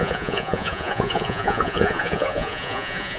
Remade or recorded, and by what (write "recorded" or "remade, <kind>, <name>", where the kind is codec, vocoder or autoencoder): remade, vocoder, Vocos